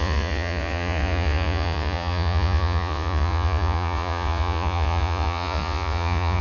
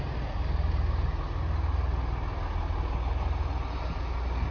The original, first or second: second